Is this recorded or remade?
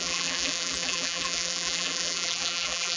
remade